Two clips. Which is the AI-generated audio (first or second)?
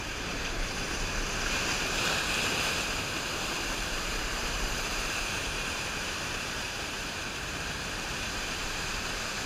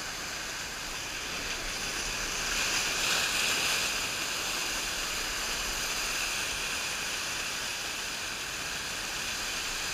first